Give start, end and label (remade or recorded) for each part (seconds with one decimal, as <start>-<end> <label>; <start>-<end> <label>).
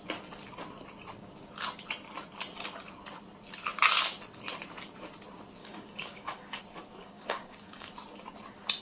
0.0-5.6 recorded; 5.6-6.6 remade; 6.6-7.0 recorded; 7.0-7.9 remade; 7.9-8.8 recorded